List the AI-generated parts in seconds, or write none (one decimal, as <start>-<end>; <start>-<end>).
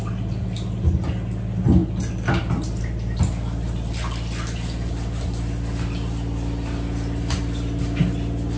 none